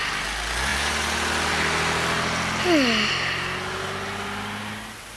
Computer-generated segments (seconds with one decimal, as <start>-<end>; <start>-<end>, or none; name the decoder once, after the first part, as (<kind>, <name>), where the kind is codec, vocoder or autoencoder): none